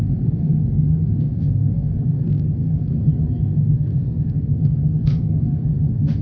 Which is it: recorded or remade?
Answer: remade